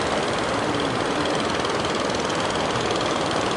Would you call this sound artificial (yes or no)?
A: no